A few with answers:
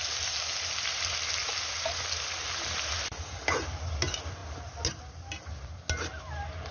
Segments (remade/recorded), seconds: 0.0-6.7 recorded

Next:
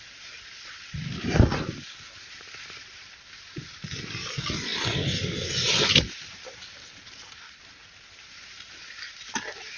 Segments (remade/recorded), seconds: 0.0-9.8 recorded